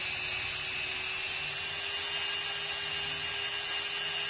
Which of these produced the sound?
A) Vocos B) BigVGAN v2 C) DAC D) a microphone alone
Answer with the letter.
D